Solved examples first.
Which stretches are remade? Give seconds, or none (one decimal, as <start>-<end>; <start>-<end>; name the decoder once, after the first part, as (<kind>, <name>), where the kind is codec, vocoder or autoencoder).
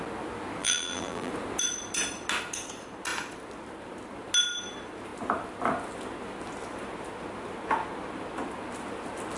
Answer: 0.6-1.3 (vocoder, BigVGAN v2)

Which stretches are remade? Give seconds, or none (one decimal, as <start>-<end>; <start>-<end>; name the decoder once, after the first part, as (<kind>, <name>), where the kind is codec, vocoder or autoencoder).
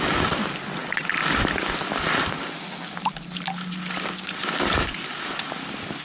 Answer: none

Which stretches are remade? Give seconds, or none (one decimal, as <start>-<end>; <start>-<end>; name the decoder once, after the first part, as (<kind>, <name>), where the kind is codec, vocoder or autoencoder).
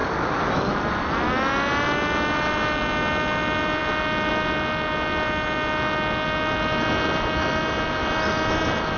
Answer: none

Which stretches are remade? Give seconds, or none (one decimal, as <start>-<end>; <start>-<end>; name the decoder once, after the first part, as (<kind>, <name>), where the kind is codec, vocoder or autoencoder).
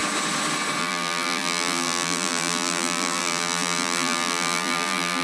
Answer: 0.8-5.2 (vocoder, BigVGAN v2)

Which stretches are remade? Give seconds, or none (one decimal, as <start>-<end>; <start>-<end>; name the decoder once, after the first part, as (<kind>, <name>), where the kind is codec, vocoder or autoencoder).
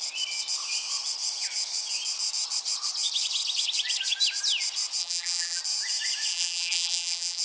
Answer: 5.0-5.6 (vocoder, BigVGAN v2); 6.3-7.4